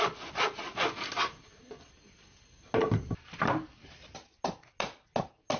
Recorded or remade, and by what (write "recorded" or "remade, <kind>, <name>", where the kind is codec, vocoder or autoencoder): recorded